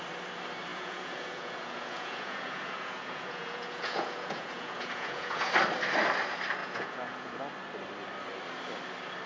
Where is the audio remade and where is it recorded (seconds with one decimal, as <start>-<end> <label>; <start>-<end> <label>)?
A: 0.0-0.7 recorded; 0.7-5.5 remade; 5.5-6.6 recorded; 6.6-7.4 remade; 7.4-9.3 recorded